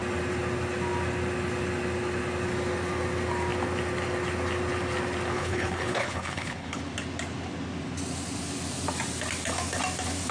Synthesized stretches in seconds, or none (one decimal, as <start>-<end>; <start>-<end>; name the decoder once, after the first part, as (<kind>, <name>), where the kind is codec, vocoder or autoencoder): 5.3-6.8 (codec, HILCodec)